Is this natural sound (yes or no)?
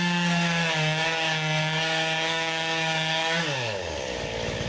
no